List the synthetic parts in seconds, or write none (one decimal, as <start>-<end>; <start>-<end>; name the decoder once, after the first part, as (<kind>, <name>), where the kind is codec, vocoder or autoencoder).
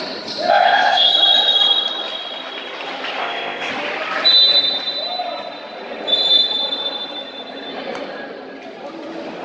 0.5-1.1 (codec, ZipCodec); 3.2-3.7